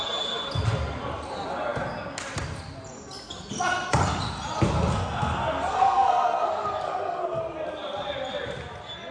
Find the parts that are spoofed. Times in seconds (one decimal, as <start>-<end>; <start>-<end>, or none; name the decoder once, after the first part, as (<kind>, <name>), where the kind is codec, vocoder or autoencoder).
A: 4.8-7.4 (codec, SNAC)